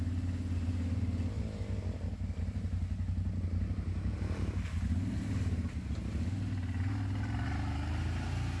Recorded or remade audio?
recorded